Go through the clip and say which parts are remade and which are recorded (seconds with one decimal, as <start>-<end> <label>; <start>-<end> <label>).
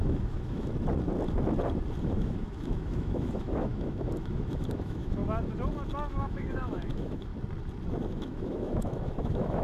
0.0-0.7 remade; 0.7-2.0 recorded; 2.0-5.2 remade; 5.2-6.1 recorded; 6.1-7.3 remade; 7.3-8.1 recorded; 8.1-9.6 remade